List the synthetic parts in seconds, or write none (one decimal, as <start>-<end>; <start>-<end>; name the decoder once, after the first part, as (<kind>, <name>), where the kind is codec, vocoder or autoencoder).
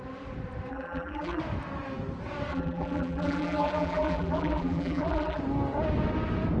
0.7-1.4 (vocoder, BigVGAN v2); 2.5-5.4